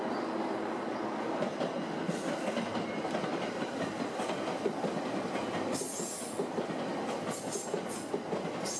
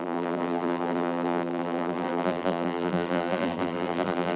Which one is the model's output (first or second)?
second